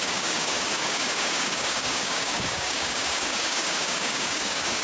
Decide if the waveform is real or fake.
fake